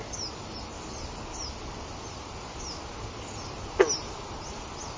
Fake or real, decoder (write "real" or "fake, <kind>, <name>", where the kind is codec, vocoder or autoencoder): real